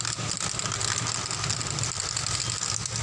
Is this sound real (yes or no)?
yes